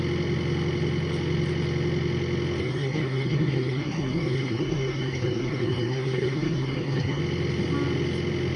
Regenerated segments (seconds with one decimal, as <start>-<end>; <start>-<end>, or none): 2.6-7.2